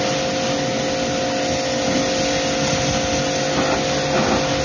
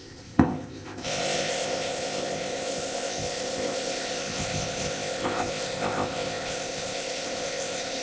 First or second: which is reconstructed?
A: second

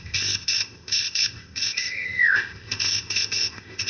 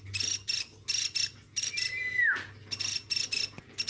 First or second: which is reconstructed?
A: first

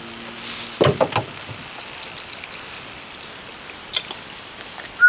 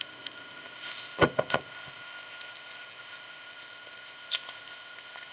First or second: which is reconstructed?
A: second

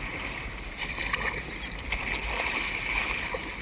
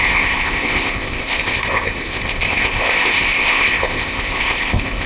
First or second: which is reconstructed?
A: second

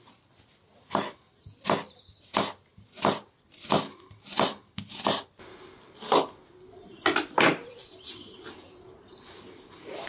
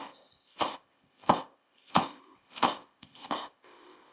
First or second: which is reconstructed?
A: second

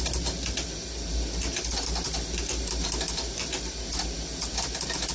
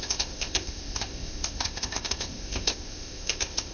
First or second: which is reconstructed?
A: second